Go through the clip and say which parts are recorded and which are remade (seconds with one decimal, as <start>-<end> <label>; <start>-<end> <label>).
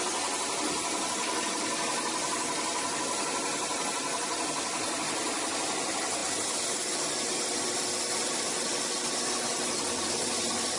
0.0-10.8 recorded